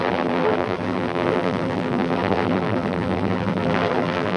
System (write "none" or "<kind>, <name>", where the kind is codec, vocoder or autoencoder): vocoder, BigVGAN v2